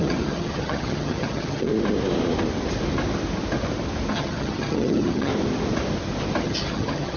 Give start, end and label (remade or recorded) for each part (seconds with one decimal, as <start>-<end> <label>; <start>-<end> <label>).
0.0-1.7 remade; 1.7-4.1 recorded; 4.1-5.3 remade; 5.3-6.4 recorded; 6.4-7.2 remade